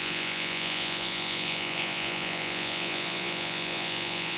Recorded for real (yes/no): no